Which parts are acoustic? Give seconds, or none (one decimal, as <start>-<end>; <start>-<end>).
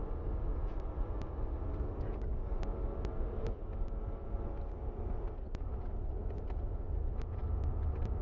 0.0-8.2